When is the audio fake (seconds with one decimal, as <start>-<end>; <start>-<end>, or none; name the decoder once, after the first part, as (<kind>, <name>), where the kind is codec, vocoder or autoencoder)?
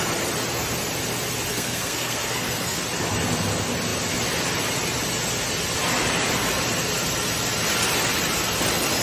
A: 1.5-2.8 (codec, SNAC)